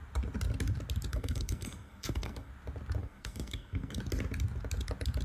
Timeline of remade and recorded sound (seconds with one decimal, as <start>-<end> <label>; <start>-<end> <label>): 0.0-1.1 recorded; 1.1-2.5 remade; 2.5-3.0 recorded; 3.0-4.0 remade; 4.0-5.2 recorded